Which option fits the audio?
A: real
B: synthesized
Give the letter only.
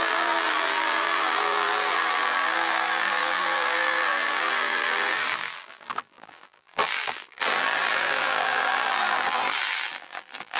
B